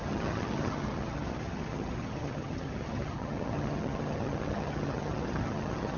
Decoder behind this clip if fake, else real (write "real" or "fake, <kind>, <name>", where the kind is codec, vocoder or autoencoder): fake, vocoder, HiFi-GAN